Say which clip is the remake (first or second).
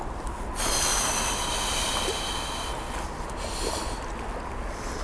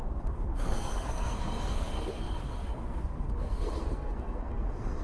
second